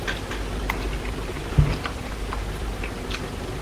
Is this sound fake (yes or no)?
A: no